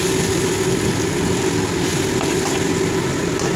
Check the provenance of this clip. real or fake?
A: real